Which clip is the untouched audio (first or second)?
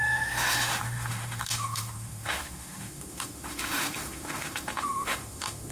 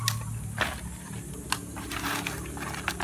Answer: second